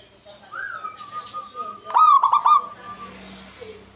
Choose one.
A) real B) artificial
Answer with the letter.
A